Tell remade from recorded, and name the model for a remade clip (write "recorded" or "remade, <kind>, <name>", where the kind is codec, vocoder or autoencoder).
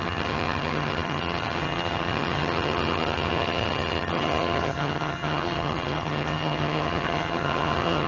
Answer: remade, vocoder, HiFi-GAN